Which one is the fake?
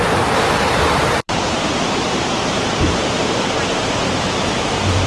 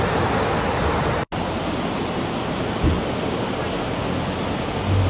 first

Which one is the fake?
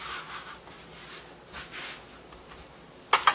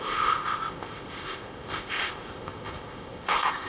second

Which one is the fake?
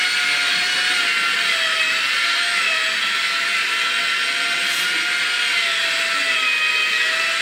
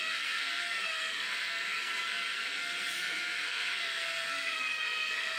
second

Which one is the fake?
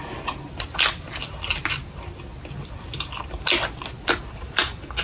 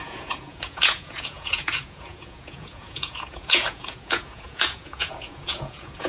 second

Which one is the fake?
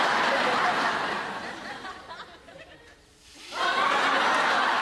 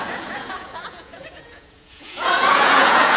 second